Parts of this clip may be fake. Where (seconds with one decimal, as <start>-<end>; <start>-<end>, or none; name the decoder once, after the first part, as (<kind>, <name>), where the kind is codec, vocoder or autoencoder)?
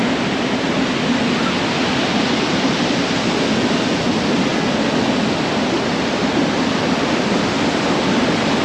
none